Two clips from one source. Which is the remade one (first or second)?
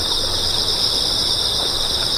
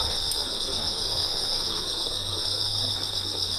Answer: second